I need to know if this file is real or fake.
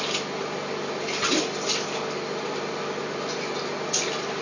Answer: real